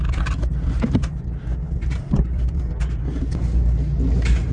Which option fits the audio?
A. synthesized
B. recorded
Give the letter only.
B